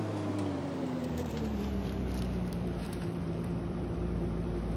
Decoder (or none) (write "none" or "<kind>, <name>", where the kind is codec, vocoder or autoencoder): vocoder, BigVGAN v2